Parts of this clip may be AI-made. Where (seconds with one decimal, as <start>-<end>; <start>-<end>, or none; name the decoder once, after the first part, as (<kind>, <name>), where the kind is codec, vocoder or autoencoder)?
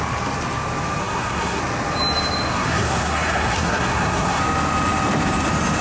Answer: 1.0-1.6 (codec, SNAC); 2.5-4.4